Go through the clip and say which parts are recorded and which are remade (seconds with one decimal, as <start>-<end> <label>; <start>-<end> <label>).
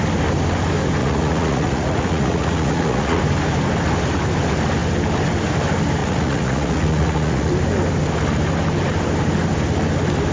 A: 0.0-1.0 recorded; 1.0-3.2 remade; 3.2-6.0 recorded; 6.0-7.5 remade; 7.5-10.3 recorded